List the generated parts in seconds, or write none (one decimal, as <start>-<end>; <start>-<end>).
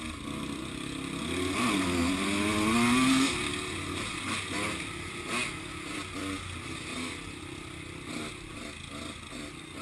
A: none